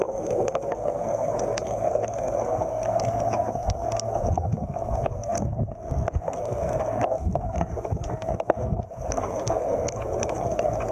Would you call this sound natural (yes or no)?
no